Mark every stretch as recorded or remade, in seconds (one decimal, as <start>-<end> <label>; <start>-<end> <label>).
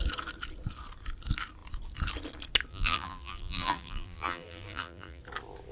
0.0-2.7 recorded; 2.7-5.2 remade; 5.2-5.7 recorded